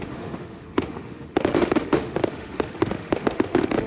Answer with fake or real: fake